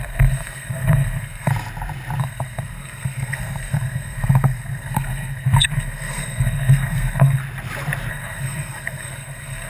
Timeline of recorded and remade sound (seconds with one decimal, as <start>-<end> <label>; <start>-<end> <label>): 0.0-1.5 remade; 1.5-2.2 recorded; 2.2-7.4 remade; 7.4-8.1 recorded; 8.1-9.7 remade